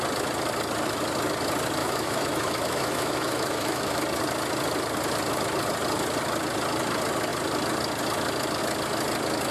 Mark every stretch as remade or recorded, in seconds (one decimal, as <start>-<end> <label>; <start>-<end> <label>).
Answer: 0.0-1.8 recorded; 1.8-4.0 remade; 4.0-9.5 recorded